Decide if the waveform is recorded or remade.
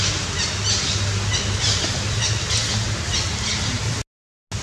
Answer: recorded